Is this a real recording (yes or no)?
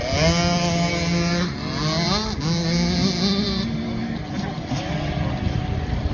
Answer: yes